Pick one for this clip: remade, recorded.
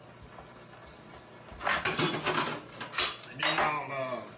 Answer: recorded